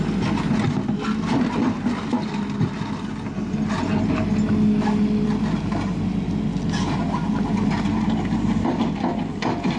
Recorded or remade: recorded